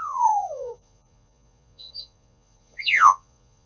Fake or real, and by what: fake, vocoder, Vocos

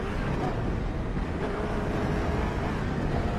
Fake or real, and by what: real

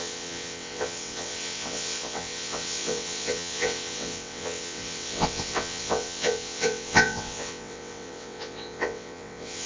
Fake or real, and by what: fake, vocoder, WaveNeXt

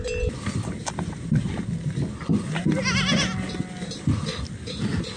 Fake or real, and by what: real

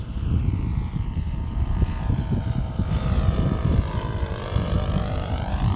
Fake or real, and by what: fake, vocoder, BigVGAN v2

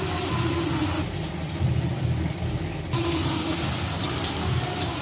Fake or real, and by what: real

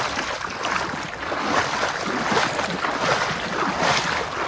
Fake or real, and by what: real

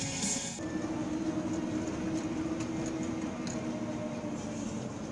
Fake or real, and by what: real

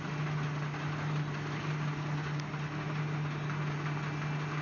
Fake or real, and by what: real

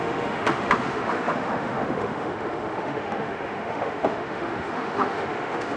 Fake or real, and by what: fake, autoencoder, DAC-VAE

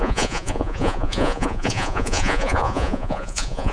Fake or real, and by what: fake, vocoder, Vocos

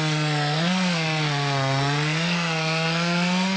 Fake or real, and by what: fake, codec, SNAC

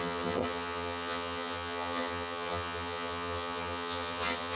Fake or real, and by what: fake, vocoder, HiFi-GAN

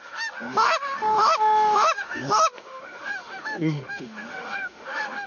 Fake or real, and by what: fake, autoencoder, DAC-VAE